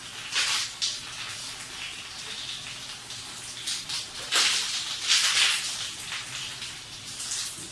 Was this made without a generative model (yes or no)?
yes